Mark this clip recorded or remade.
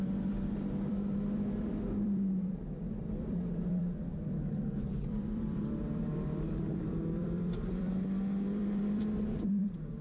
remade